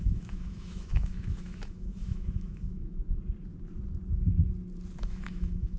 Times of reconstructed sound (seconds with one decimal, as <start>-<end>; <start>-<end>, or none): 0.0-3.0; 5.0-5.8